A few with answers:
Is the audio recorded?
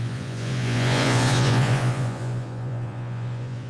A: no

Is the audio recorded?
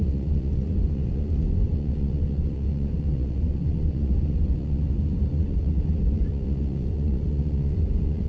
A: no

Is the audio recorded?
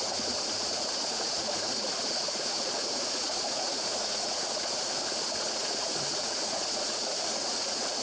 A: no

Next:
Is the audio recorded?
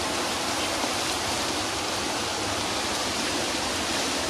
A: yes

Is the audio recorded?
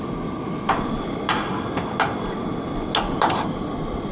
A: yes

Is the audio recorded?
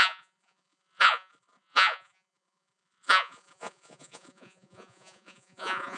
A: no